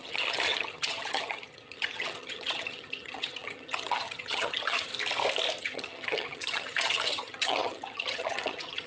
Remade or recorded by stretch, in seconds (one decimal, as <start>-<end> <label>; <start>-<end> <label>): 0.0-4.9 remade; 4.9-5.6 recorded; 5.6-8.9 remade